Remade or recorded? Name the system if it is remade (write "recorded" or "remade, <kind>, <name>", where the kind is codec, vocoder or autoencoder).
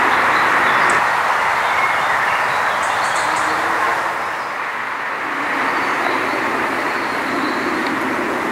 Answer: recorded